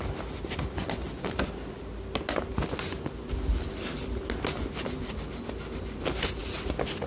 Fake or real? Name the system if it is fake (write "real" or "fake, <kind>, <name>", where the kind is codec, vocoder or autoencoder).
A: real